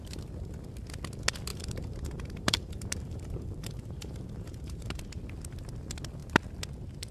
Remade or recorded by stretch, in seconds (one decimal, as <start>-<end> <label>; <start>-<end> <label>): 0.0-1.5 recorded; 1.5-5.0 remade; 5.0-7.1 recorded